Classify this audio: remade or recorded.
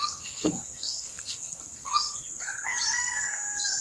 remade